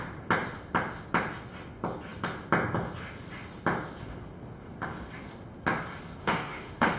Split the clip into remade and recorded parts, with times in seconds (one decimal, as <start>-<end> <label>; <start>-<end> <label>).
0.0-6.2 recorded; 6.2-7.0 remade